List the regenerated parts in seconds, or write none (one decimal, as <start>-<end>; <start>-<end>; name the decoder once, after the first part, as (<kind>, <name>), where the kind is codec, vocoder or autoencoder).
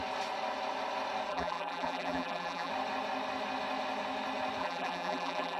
1.3-2.7 (vocoder, BigVGAN v2); 4.6-5.6